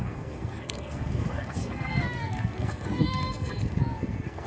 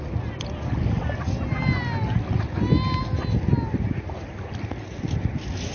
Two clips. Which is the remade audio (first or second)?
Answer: first